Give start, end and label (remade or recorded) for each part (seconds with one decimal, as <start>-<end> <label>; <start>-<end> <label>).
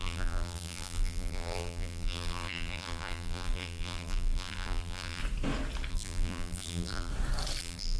0.0-5.2 remade; 5.2-5.9 recorded; 5.9-7.1 remade; 7.1-7.6 recorded; 7.6-8.0 remade